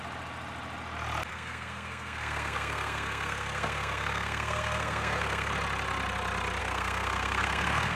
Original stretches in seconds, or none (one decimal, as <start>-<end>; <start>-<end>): 0.0-1.3; 5.5-6.6

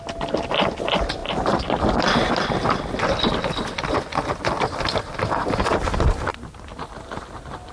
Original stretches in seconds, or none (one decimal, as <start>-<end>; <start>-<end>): 0.0-7.7